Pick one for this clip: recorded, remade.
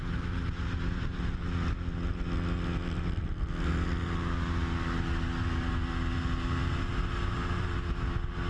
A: recorded